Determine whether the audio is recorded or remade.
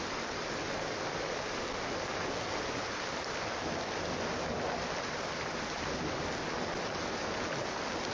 recorded